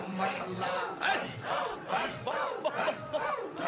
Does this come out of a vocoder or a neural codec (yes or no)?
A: yes